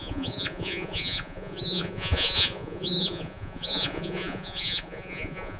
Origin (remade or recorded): remade